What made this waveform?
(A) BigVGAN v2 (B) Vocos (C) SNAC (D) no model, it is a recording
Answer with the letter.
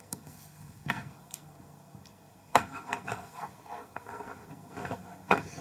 C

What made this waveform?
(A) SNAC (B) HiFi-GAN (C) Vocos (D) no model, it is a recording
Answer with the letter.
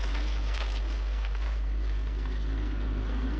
A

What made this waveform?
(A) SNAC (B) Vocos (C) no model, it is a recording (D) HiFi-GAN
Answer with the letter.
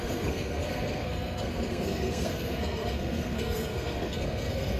A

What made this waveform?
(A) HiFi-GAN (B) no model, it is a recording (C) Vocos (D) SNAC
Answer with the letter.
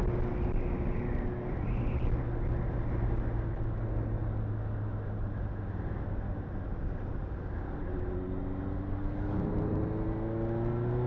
B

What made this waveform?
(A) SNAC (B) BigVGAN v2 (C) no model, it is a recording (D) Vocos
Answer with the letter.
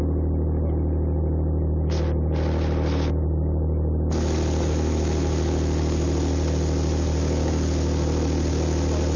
C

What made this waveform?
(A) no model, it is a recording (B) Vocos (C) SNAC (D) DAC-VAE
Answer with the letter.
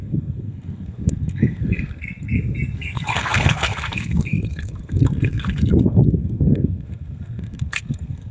C